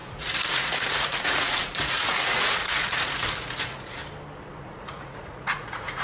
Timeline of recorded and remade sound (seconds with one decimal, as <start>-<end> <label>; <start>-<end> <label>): 0.0-4.0 remade; 4.0-4.5 recorded; 4.5-6.0 remade